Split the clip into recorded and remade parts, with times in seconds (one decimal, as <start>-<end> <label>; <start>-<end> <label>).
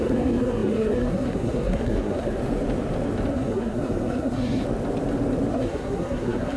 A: 0.0-2.4 remade; 2.4-3.3 recorded; 3.3-4.6 remade; 4.6-5.5 recorded; 5.5-6.6 remade